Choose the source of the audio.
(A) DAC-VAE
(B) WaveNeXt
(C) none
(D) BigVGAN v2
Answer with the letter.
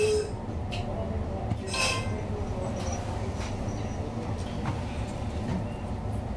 C